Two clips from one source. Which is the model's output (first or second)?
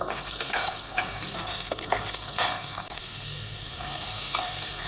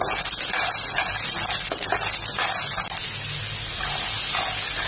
first